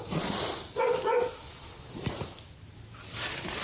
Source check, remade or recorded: recorded